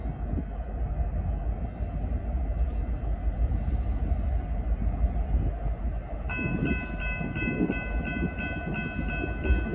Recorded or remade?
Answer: recorded